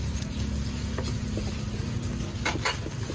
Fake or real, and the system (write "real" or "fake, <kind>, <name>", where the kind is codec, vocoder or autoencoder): real